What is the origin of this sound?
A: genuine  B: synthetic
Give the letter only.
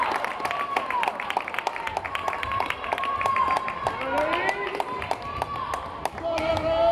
A